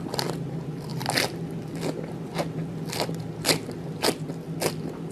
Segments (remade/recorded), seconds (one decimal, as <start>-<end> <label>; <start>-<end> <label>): 0.0-5.1 recorded